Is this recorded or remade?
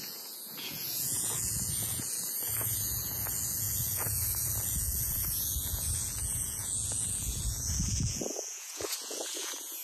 remade